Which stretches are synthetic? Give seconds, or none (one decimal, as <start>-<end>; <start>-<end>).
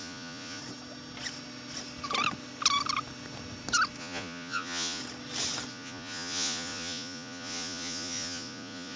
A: 0.0-0.6; 4.0-5.0; 5.7-9.0